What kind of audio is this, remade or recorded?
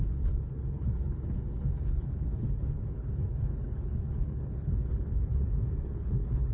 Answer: remade